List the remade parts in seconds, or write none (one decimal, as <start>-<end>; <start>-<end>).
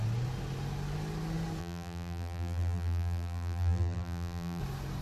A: 1.6-4.6